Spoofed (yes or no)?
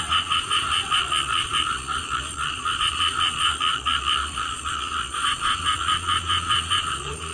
yes